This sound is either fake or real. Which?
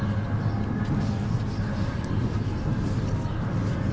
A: real